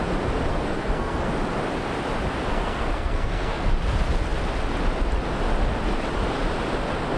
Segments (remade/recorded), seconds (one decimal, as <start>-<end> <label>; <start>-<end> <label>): 0.0-0.5 recorded; 0.5-1.3 remade; 1.3-2.5 recorded; 2.5-3.7 remade; 3.7-7.2 recorded